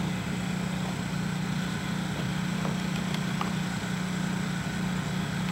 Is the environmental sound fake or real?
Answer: real